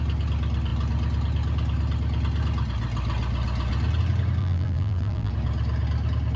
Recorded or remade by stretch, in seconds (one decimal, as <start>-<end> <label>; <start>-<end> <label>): 0.0-4.4 recorded; 4.4-5.3 remade; 5.3-6.4 recorded